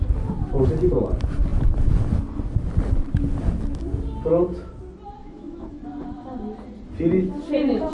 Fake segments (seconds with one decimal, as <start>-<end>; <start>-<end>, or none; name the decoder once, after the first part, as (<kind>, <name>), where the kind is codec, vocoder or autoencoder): 5.2-5.8 (autoencoder, DAC-VAE)